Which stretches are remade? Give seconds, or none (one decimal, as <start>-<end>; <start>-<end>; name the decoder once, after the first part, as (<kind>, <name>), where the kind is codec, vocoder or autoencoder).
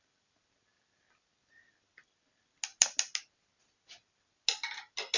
none